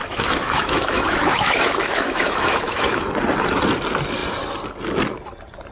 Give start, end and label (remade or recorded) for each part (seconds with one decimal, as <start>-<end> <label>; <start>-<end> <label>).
0.0-3.1 remade; 3.1-5.7 recorded